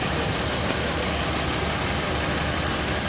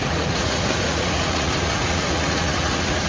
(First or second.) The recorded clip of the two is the first